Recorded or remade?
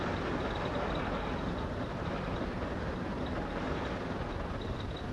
recorded